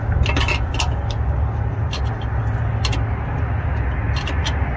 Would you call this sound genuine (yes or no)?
yes